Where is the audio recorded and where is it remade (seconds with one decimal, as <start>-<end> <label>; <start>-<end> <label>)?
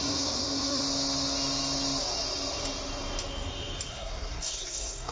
0.0-0.8 remade; 0.8-3.9 recorded; 3.9-5.1 remade